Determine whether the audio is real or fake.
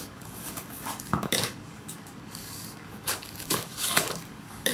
fake